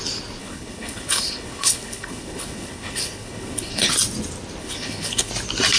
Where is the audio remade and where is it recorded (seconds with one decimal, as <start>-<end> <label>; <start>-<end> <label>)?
0.0-0.4 recorded; 0.4-3.9 remade; 3.9-4.6 recorded; 4.6-5.3 remade; 5.3-5.8 recorded